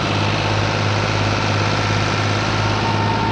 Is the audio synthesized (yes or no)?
no